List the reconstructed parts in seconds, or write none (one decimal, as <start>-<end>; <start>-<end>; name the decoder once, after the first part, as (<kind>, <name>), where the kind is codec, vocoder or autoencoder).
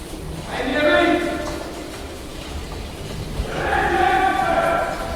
4.3-4.8 (vocoder, BigVGAN v2)